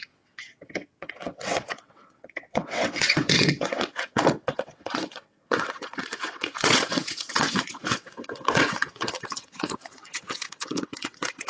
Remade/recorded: remade